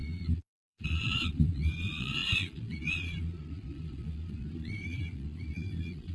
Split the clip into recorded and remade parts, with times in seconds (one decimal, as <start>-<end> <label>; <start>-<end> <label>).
0.0-6.1 remade